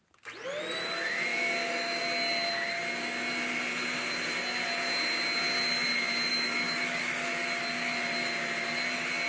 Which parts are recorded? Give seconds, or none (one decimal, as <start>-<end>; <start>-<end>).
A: 0.0-1.3; 2.0-6.3; 7.3-9.3